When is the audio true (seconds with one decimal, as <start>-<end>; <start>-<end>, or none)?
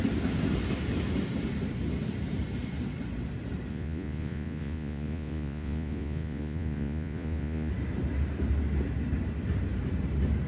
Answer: 0.0-3.7; 7.7-10.5